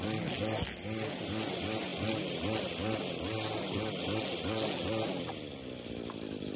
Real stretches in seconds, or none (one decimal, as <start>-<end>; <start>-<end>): 0.0-6.6